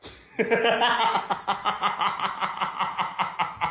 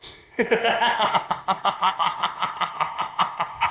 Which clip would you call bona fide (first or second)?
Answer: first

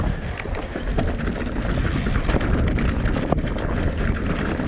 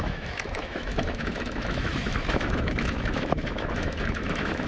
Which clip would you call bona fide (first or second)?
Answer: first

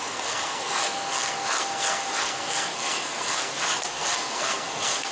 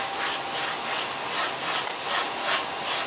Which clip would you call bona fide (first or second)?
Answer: second